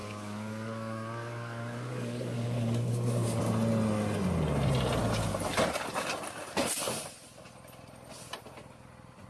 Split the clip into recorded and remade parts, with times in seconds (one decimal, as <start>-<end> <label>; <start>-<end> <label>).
0.0-3.4 remade; 3.4-9.3 recorded